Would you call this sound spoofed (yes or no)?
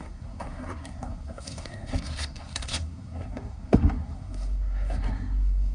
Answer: yes